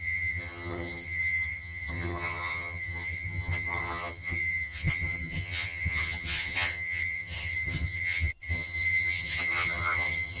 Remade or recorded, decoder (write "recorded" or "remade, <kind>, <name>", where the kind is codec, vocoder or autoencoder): remade, vocoder, HiFi-GAN